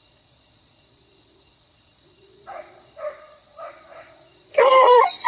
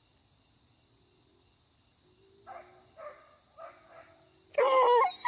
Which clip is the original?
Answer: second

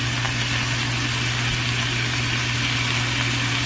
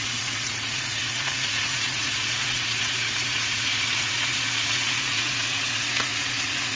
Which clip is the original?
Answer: first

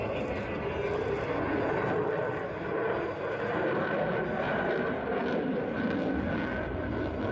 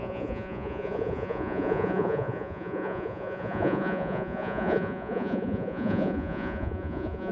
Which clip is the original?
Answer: first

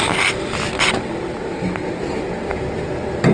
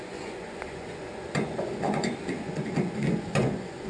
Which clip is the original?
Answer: first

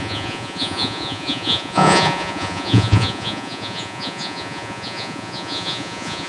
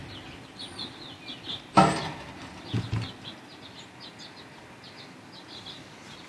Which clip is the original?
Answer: second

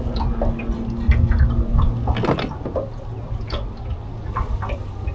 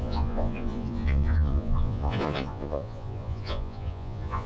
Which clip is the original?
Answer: first